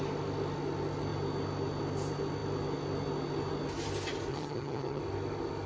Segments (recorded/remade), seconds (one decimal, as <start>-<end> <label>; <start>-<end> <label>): 0.0-4.3 recorded; 4.3-5.0 remade; 5.0-5.7 recorded